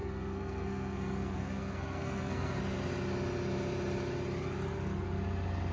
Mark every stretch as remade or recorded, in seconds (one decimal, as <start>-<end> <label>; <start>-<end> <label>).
0.0-2.6 remade; 2.6-5.7 recorded